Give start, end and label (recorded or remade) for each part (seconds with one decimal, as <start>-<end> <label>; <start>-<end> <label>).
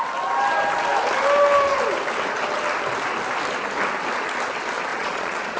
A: 0.0-4.9 recorded; 4.9-5.6 remade